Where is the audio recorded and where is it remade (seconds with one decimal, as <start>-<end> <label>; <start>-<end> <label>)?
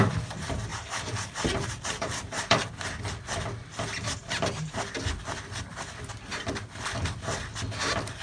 0.0-0.7 recorded; 0.7-2.7 remade; 2.7-8.2 recorded